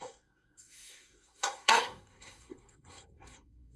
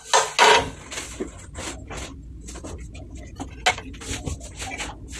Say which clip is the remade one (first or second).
first